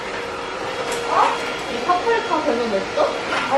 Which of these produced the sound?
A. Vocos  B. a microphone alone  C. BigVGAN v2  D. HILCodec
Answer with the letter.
B